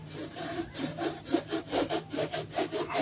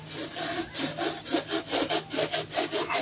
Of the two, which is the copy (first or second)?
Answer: first